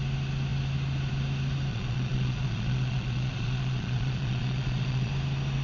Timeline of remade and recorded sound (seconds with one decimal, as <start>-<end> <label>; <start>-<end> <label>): 0.0-1.7 recorded; 1.7-5.1 remade; 5.1-5.6 recorded